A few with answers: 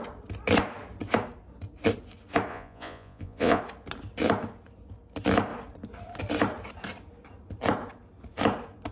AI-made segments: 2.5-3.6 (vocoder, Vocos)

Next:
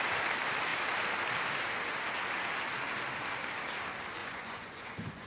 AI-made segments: 4.2-5.3 (vocoder, Vocos)

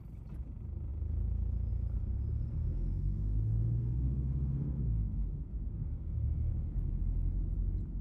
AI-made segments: 2.5-6.5 (codec, SNAC)